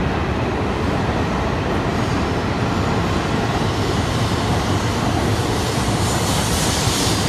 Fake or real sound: real